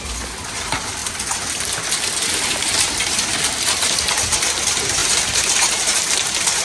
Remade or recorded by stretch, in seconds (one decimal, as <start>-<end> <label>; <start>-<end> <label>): 0.0-6.6 recorded